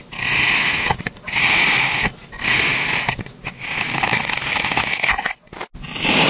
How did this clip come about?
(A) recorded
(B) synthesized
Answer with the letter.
A